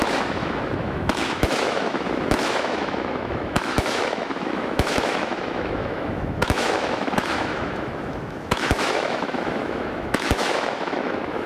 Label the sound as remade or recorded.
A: remade